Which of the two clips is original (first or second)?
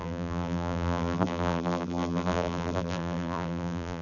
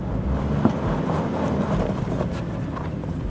second